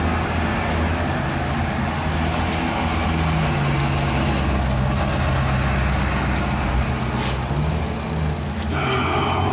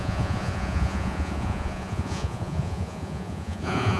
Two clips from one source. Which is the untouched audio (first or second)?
first